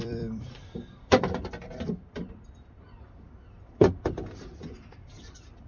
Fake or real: fake